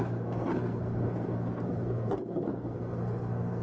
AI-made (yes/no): yes